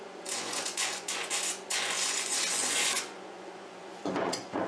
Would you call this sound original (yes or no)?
no